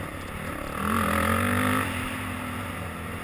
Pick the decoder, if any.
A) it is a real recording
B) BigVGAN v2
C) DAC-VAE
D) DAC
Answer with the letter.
A